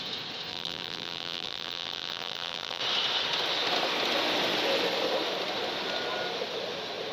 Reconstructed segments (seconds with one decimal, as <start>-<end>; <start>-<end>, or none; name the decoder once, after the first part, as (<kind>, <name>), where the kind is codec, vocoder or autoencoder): 0.5-2.8 (vocoder, BigVGAN v2)